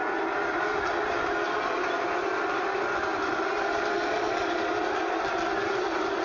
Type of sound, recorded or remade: recorded